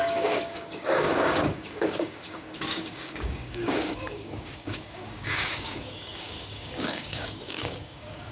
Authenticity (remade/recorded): remade